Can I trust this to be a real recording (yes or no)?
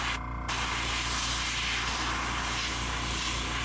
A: yes